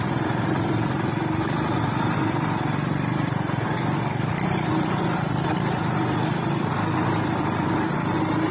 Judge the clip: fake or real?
fake